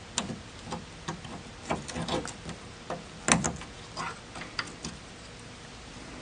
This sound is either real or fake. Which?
real